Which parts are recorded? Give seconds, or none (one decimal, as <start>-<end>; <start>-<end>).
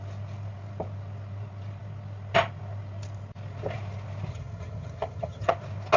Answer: 0.0-4.3; 5.5-6.0